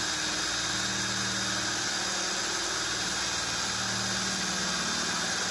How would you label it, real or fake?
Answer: real